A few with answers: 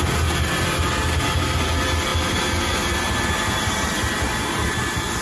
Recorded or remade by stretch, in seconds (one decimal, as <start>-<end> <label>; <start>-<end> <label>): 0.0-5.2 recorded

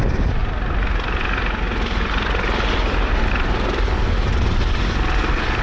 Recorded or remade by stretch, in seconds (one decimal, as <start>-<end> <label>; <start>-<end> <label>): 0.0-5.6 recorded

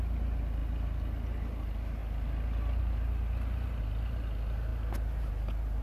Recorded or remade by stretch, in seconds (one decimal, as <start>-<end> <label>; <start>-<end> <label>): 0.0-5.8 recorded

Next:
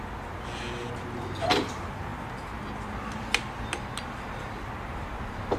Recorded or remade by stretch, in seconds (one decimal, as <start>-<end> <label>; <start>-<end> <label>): 0.0-5.6 recorded

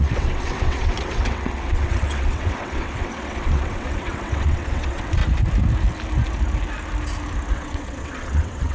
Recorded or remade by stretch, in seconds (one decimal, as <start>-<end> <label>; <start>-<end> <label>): 0.0-5.2 remade; 5.2-7.5 recorded; 7.5-8.7 remade

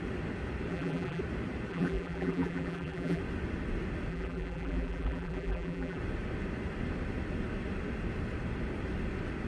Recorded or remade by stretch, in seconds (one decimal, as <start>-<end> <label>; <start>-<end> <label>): 0.0-0.7 recorded; 0.7-1.2 remade; 1.2-1.7 recorded; 1.7-3.2 remade; 3.2-4.1 recorded; 4.1-6.0 remade; 6.0-9.5 recorded

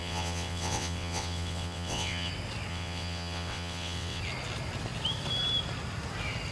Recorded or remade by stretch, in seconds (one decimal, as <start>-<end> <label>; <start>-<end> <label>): 0.0-2.3 remade; 2.3-2.7 recorded; 2.7-4.2 remade; 4.2-6.5 recorded

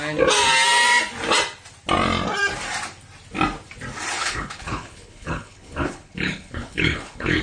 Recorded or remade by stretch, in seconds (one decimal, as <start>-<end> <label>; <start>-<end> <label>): 0.0-4.2 recorded; 4.2-7.4 remade